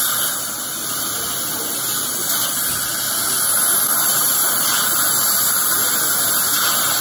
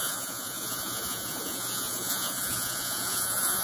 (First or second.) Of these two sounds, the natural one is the first